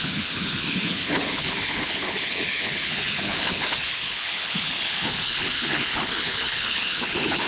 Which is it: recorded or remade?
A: remade